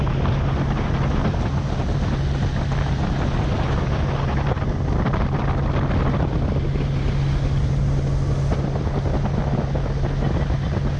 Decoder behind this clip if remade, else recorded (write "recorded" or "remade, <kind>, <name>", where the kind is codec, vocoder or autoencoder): recorded